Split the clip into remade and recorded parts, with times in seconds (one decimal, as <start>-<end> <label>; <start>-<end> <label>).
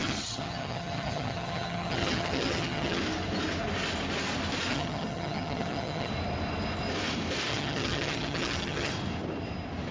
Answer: 0.0-3.0 remade; 3.0-4.7 recorded; 4.7-6.1 remade; 6.1-7.5 recorded; 7.5-8.9 remade; 8.9-9.9 recorded